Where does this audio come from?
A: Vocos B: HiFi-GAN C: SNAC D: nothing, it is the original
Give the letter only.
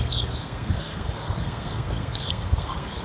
C